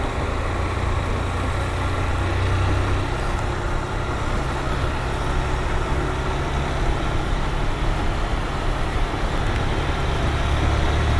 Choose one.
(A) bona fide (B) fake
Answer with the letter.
A